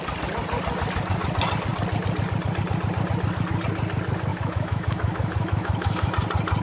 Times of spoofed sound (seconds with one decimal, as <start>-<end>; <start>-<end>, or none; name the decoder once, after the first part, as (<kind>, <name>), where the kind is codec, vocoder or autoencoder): 4.3-6.1 (autoencoder, DAC-VAE)